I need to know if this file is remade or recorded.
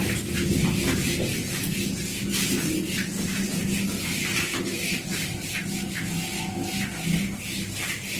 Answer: remade